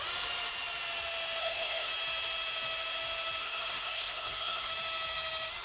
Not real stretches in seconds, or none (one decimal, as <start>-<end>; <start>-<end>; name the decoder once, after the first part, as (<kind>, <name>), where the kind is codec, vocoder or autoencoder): 1.4-1.9 (codec, SNAC); 3.4-4.7